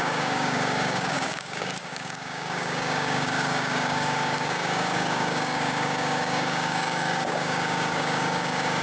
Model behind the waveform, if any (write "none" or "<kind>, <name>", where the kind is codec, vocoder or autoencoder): codec, DAC